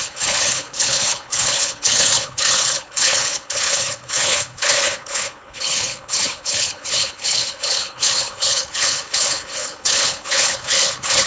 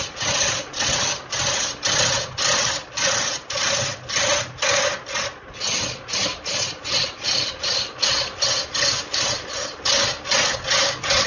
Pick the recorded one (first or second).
second